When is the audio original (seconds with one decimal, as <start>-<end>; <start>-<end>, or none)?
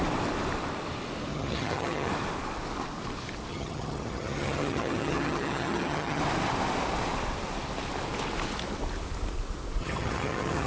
0.0-1.3; 2.1-3.5; 6.2-9.8